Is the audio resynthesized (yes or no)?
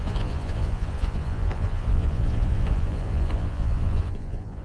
yes